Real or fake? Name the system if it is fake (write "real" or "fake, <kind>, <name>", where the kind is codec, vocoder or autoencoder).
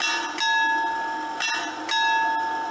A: real